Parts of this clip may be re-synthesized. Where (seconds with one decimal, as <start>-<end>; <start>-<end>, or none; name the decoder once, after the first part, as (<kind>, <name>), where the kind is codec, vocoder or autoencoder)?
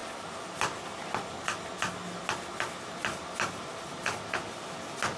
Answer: none